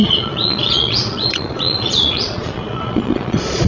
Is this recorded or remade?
remade